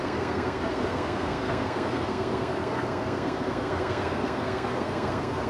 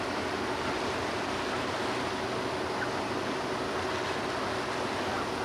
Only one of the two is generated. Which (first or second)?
first